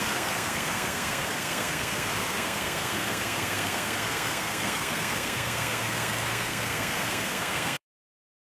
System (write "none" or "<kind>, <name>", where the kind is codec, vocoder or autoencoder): codec, SNAC